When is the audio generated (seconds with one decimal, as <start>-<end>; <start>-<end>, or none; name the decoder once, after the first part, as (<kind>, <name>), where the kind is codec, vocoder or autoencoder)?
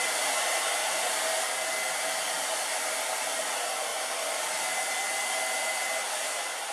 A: none